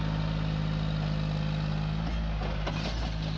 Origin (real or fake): real